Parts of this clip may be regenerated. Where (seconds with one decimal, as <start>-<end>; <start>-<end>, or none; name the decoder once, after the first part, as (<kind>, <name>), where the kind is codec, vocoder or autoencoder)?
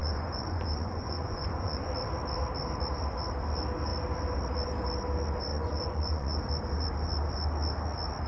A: 0.0-1.9 (vocoder, Vocos); 5.5-6.4